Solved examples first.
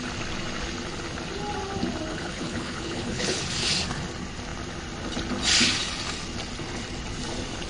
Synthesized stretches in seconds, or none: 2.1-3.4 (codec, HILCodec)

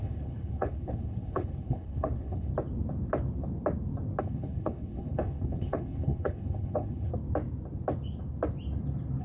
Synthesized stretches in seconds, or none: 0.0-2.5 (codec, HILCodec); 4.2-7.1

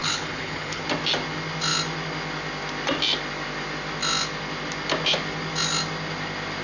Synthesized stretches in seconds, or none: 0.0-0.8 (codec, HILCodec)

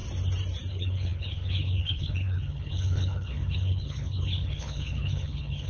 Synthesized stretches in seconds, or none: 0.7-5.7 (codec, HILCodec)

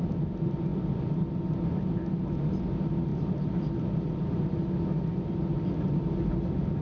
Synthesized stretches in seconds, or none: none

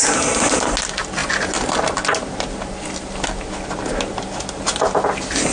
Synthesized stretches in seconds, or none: none